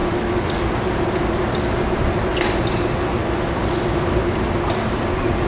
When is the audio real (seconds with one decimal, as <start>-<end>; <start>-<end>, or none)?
0.0-5.5